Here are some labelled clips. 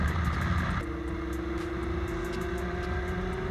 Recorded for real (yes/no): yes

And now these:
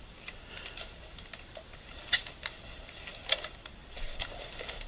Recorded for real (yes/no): no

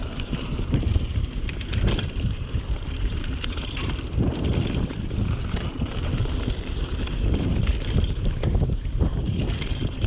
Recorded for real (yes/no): no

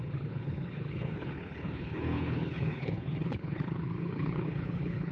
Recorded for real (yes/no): no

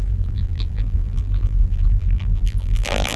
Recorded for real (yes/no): no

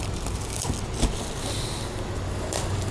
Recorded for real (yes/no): yes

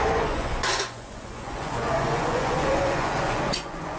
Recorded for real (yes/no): no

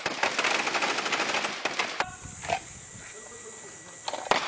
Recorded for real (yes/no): yes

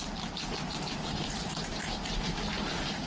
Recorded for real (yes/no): yes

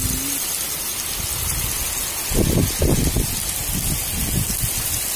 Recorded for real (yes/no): yes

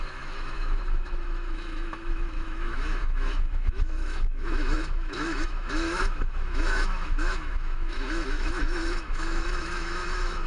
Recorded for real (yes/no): no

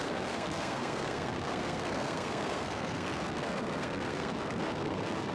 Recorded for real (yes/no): no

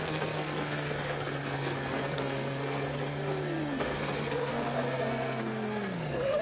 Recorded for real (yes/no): no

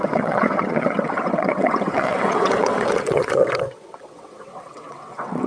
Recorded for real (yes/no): no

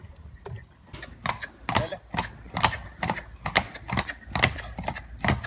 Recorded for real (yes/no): yes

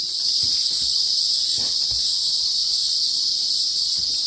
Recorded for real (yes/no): yes